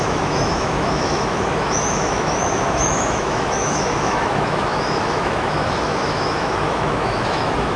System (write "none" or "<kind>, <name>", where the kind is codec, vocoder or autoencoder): autoencoder, DAC-VAE